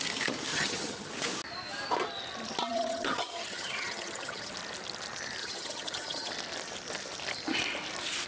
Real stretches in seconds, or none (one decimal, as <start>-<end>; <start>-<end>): 0.0-0.5; 1.1-2.7; 4.5-5.4; 6.3-8.3